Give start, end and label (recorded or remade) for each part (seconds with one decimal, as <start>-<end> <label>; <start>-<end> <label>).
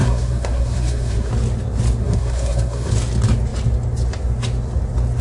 0.0-1.3 remade; 1.3-2.0 recorded; 2.0-2.9 remade; 2.9-5.2 recorded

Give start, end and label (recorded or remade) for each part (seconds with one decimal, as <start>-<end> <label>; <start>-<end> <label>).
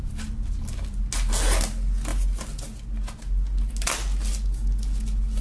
0.0-5.4 recorded